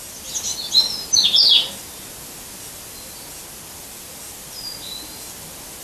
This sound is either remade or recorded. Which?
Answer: recorded